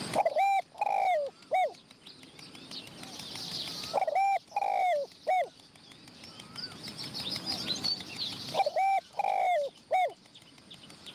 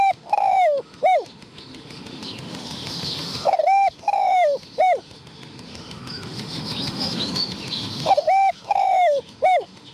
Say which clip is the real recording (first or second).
first